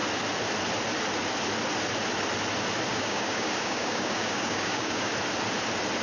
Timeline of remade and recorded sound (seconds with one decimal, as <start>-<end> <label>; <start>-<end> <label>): 0.0-2.9 recorded; 2.9-5.1 remade; 5.1-6.0 recorded

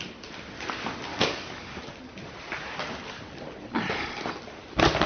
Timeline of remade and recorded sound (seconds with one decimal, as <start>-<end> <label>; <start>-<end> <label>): 0.0-1.1 recorded; 1.1-1.8 remade; 1.8-5.1 recorded

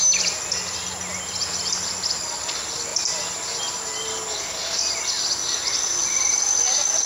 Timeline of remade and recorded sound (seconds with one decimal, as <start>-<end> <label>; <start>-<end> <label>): 0.0-4.1 recorded; 4.1-4.8 remade; 4.8-7.1 recorded